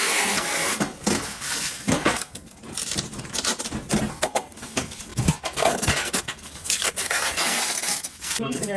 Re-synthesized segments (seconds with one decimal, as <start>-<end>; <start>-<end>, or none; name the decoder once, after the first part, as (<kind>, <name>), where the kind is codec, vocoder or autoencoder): 0.0-2.6 (codec, SNAC); 4.1-8.8